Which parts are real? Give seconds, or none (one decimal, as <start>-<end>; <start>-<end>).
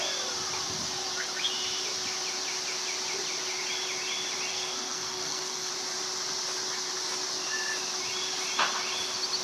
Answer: 0.0-4.5; 5.7-9.4